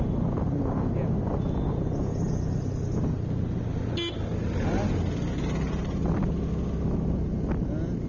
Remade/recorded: recorded